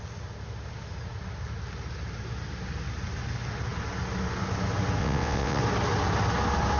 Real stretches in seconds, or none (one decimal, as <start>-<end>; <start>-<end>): 0.0-5.0; 5.6-6.8